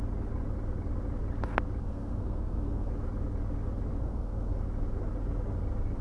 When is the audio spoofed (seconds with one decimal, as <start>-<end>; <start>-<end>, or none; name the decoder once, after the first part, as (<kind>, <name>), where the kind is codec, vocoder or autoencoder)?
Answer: 1.8-2.9 (codec, SNAC); 4.0-4.6